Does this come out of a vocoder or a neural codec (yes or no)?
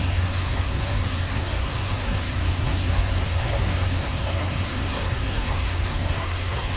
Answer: yes